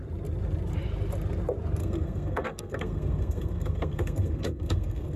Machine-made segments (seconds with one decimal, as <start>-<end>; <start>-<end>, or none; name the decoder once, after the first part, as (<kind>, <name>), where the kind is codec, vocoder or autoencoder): 1.8-5.2 (codec, SNAC)